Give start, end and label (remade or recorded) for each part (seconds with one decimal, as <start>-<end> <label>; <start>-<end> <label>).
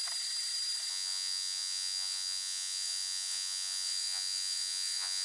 0.0-0.9 recorded; 0.9-5.2 remade